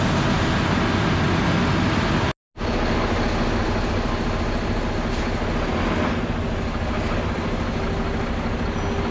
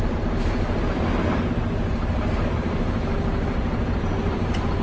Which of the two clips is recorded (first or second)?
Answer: first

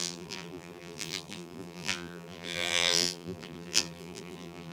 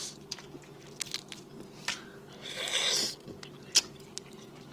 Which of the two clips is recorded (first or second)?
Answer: second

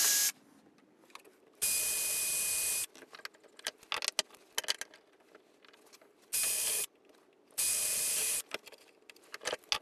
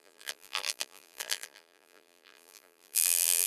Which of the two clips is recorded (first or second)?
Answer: first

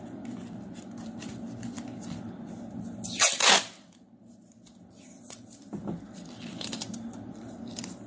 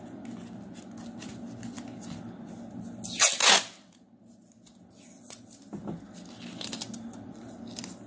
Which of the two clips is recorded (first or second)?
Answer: second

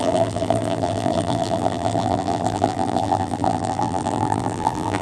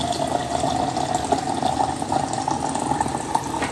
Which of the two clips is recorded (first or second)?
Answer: second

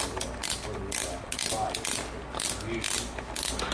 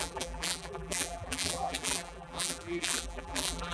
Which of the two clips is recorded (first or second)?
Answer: first